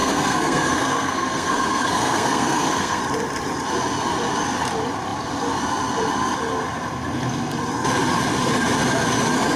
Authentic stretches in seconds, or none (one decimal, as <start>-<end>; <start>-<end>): 3.0-9.6